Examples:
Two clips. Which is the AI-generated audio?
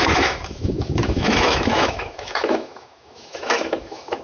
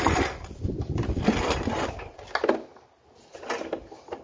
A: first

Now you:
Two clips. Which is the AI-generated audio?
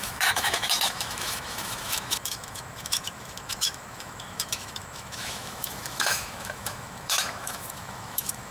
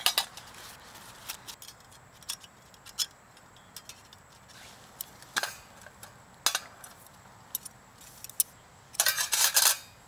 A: first